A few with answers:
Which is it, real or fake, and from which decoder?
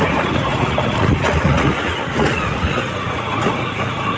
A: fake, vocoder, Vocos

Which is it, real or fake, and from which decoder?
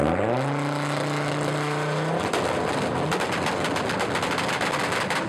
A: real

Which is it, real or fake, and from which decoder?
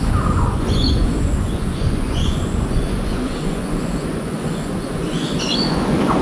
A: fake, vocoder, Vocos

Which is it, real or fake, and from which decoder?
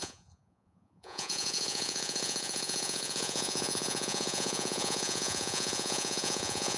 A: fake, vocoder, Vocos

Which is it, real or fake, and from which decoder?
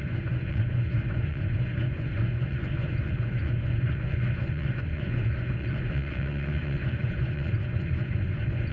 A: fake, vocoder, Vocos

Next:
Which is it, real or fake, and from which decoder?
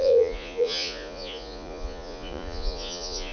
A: fake, vocoder, Vocos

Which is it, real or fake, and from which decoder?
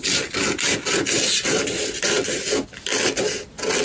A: real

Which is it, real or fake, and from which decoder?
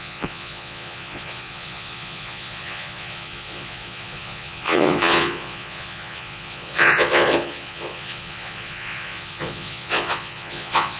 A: fake, vocoder, Vocos